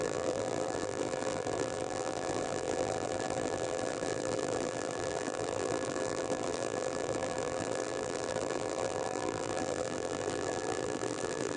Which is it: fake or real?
fake